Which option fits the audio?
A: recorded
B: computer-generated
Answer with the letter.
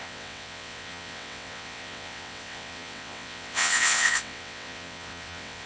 B